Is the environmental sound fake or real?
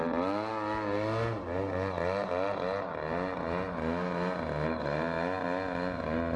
real